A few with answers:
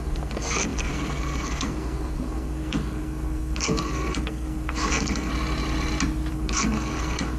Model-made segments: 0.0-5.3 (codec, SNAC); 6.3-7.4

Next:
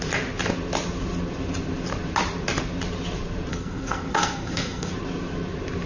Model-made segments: 3.5-4.9 (codec, SNAC)

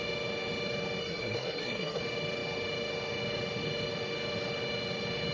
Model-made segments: 1.0-2.0 (codec, SNAC)

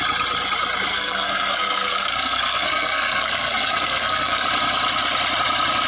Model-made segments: 0.9-4.4 (codec, SNAC)

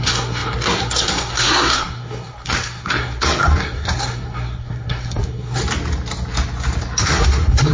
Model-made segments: 0.0-5.6 (codec, SNAC); 7.0-7.7

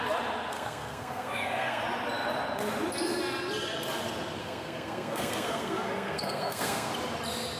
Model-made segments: 0.5-1.8 (codec, SNAC); 4.4-6.9

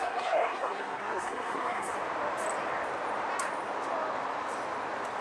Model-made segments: 0.0-1.9 (codec, SNAC)

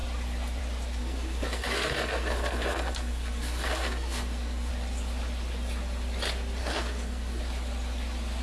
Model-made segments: 1.0-4.7 (codec, SNAC); 6.6-7.4